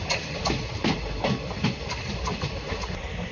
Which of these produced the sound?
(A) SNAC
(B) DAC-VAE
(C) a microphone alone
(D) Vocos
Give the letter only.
C